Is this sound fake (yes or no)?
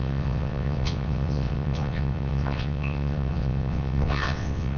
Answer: yes